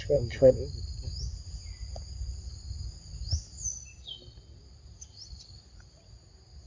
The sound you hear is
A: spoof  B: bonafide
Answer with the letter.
B